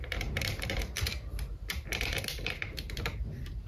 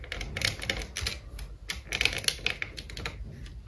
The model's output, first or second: first